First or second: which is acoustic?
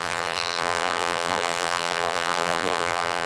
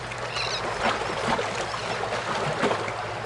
second